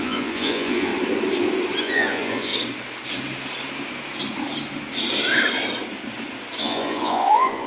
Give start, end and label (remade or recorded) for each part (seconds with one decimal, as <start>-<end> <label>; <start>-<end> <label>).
0.0-0.9 remade; 0.9-1.8 recorded; 1.8-2.5 remade; 2.5-6.6 recorded; 6.6-7.7 remade